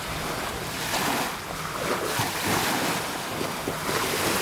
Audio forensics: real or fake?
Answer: real